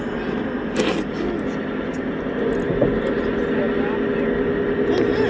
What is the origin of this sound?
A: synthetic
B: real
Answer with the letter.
B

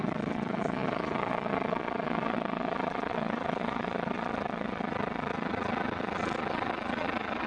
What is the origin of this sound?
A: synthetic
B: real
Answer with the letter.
A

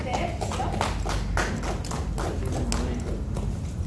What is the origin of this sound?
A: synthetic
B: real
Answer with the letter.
B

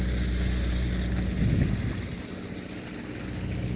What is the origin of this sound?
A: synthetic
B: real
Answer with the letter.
B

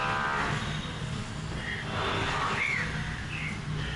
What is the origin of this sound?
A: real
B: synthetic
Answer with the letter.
A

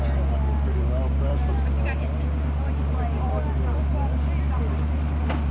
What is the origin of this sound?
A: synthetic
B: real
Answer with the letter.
B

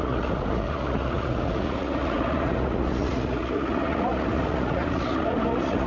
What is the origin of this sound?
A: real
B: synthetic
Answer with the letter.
B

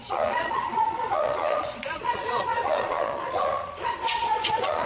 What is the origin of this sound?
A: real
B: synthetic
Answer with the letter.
B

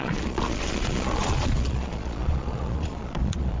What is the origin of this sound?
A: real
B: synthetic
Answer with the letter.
B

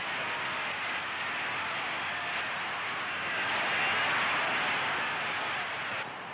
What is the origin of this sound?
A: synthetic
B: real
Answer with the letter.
B